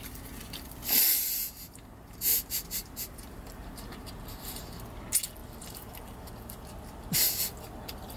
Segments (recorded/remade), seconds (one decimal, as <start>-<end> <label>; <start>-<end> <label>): 0.0-1.4 recorded; 1.4-4.5 remade; 4.5-5.4 recorded; 5.4-6.6 remade; 6.6-8.2 recorded